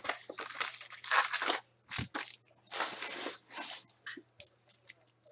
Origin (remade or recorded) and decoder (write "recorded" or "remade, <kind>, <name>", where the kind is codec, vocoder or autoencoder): recorded